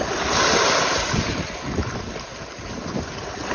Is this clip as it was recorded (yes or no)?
yes